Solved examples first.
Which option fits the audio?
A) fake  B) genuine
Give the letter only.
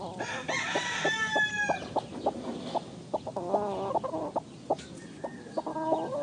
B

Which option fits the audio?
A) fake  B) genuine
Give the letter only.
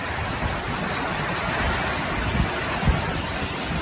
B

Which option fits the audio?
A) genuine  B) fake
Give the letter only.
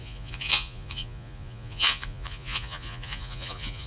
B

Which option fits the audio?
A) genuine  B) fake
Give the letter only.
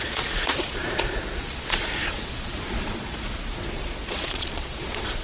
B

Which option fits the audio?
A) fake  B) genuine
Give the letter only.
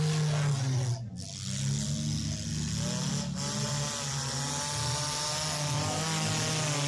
B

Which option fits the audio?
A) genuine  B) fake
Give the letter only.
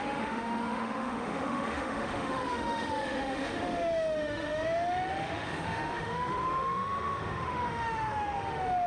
B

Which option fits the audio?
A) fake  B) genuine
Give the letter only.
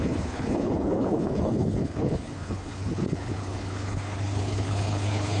A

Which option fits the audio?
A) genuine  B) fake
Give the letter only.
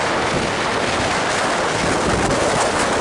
A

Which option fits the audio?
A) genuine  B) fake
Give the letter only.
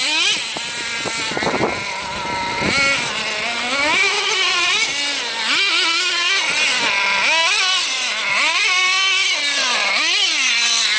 A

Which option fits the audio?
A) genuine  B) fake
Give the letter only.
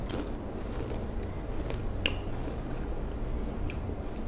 A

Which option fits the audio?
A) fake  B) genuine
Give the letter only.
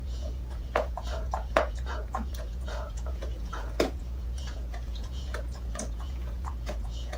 A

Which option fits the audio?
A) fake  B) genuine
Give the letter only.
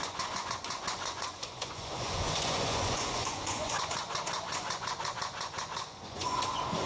A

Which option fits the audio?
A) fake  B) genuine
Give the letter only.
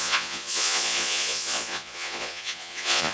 A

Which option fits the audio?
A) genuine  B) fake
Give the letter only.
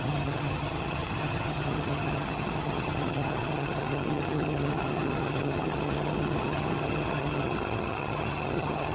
B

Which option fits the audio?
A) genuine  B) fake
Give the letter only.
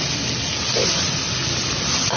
A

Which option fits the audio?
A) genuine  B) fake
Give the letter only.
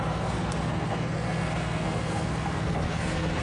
B